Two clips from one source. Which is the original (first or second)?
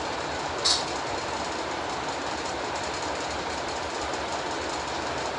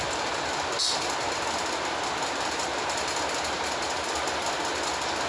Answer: second